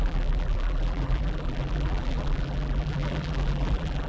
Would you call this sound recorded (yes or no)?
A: no